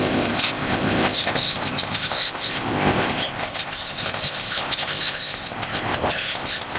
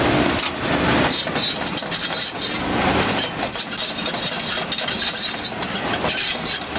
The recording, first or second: second